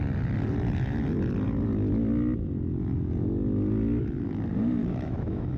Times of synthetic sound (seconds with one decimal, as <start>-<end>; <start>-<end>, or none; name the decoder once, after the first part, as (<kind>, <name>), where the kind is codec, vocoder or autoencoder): 4.8-5.6 (autoencoder, DAC-VAE)